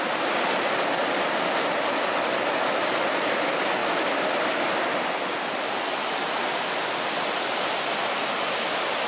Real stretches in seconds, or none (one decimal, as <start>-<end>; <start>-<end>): 0.0-9.1